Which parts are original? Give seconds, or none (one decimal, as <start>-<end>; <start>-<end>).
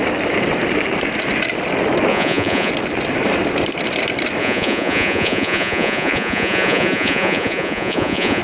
0.0-2.1; 2.7-4.4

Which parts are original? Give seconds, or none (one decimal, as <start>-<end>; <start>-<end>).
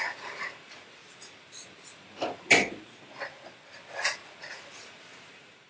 1.0-4.4